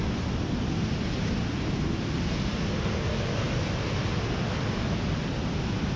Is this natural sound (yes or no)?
yes